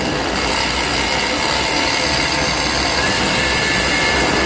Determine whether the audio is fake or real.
real